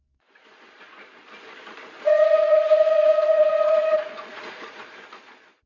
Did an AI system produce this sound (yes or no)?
yes